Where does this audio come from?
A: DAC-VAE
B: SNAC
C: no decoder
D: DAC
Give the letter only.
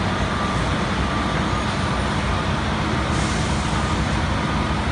C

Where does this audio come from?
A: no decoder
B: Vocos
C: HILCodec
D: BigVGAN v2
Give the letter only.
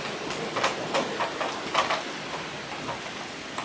A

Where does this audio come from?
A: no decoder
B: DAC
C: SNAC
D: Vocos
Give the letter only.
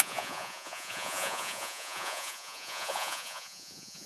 D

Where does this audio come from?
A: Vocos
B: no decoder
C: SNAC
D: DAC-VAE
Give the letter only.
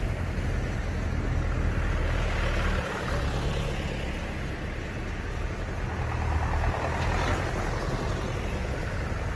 B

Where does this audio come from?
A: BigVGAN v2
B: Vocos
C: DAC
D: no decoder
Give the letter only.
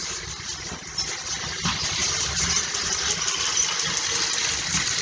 D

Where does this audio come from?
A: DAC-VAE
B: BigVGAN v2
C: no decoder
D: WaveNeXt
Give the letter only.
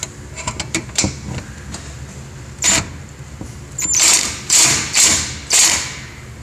C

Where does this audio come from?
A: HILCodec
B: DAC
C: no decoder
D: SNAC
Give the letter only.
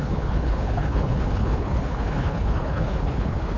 A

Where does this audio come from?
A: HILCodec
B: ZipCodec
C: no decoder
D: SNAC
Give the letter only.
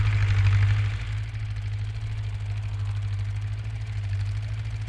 C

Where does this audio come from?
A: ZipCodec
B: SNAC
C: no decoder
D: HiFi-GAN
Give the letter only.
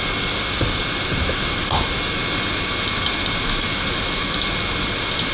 C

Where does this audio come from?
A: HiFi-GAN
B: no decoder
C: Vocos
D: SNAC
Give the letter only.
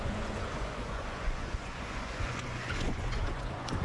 C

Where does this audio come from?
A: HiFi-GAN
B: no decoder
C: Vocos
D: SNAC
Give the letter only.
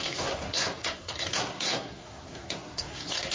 D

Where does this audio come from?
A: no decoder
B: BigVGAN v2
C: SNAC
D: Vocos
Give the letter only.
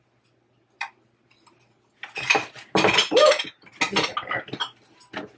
A